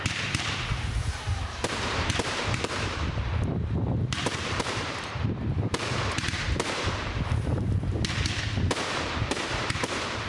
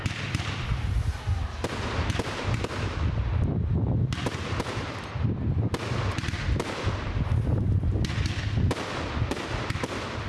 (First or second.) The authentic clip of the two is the second